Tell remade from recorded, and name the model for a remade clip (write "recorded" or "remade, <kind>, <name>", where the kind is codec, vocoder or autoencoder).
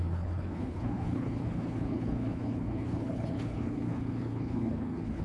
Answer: remade, codec, HILCodec